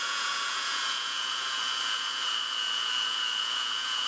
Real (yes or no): no